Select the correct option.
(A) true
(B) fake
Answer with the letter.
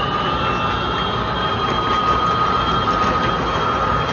A